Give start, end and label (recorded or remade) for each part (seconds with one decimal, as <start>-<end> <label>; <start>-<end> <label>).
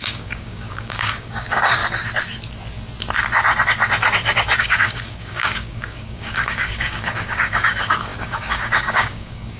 0.0-1.8 remade; 1.8-4.6 recorded; 4.6-9.6 remade